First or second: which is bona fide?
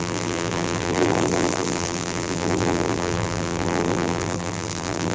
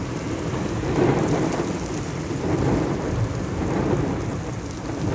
second